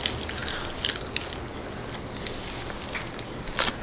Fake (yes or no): no